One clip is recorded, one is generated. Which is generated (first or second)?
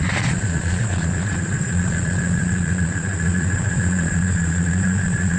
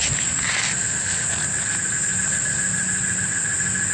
first